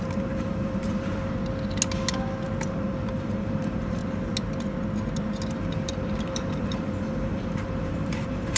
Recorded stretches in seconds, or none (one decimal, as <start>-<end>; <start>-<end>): 1.4-2.7; 4.0-5.6

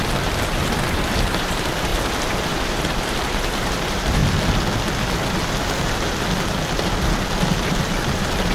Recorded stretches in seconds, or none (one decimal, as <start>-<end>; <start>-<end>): 1.9-2.4; 4.2-7.7

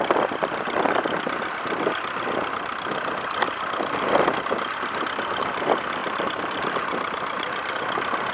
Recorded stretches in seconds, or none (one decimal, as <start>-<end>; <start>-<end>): 0.0-6.0; 7.7-8.3

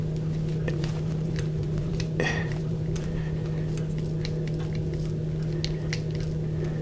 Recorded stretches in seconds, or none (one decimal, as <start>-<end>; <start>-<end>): 0.0-0.7; 3.2-6.8